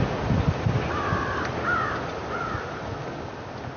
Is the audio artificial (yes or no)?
no